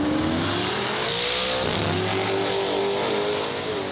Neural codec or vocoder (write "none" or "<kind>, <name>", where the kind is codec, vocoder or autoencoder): none